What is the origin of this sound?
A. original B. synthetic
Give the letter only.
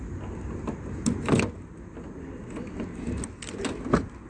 A